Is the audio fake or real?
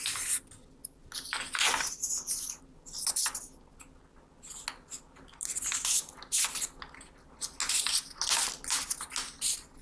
real